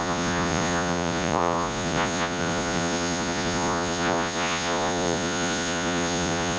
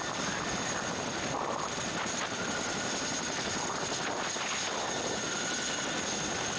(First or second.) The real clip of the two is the second